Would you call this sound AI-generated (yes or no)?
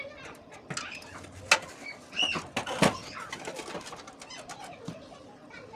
no